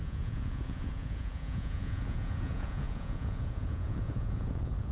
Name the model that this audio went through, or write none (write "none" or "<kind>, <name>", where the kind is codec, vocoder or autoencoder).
vocoder, Vocos